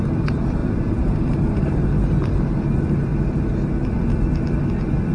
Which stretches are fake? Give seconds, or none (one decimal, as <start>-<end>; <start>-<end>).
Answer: 0.6-1.9